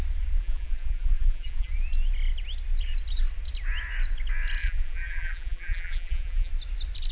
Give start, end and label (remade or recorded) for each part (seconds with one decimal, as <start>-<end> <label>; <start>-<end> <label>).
0.0-0.4 recorded; 0.4-1.7 remade; 1.7-4.6 recorded; 4.6-6.5 remade; 6.5-7.1 recorded